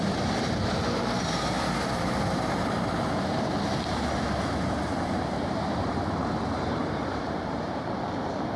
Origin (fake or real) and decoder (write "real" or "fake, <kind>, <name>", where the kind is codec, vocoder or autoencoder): fake, vocoder, BigVGAN v2